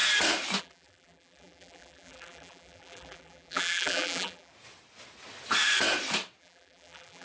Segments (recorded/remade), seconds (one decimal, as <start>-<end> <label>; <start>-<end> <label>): 0.0-0.6 recorded; 0.6-4.5 remade; 4.5-6.4 recorded; 6.4-7.2 remade